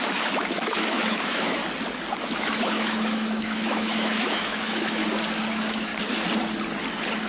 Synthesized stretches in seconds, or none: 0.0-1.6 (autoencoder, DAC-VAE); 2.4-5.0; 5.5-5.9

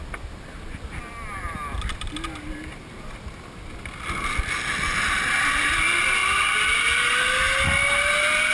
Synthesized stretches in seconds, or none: none

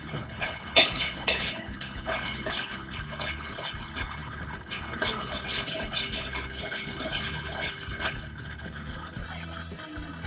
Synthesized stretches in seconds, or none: 0.0-9.2 (codec, HILCodec)

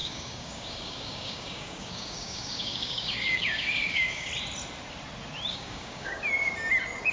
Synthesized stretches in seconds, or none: 0.0-4.3 (codec, DAC); 5.5-6.3